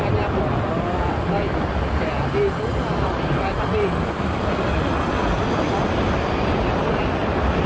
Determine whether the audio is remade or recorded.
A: recorded